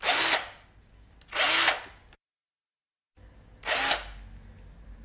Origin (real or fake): real